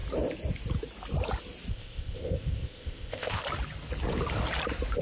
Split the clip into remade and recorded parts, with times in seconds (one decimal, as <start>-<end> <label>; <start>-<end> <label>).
0.0-1.7 recorded; 1.7-3.4 remade; 3.4-5.0 recorded